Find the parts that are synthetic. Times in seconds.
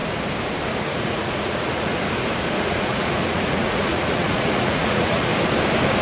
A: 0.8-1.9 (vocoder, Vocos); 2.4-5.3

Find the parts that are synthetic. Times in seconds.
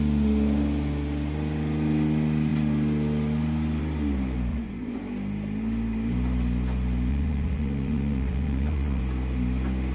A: 4.5-5.0 (vocoder, Vocos); 7.1-9.0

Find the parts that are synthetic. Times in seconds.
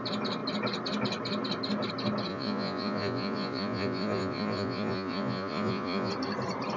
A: 2.3-6.1 (vocoder, Vocos)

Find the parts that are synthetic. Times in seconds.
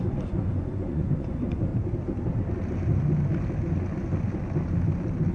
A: 0.0-1.7 (vocoder, Vocos)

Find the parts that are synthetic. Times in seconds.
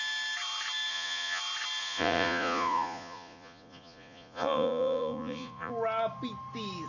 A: 0.9-1.4 (vocoder, Vocos); 1.8-5.7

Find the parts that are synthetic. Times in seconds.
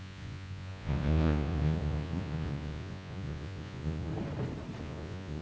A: 0.0-4.1 (vocoder, Vocos); 4.8-5.4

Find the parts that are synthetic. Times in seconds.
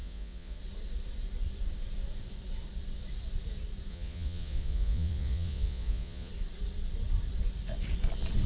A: 0.0-0.6 (vocoder, Vocos); 3.9-6.3